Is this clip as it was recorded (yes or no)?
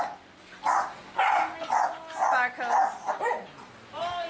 yes